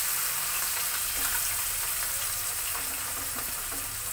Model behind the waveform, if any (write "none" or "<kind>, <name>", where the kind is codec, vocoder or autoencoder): none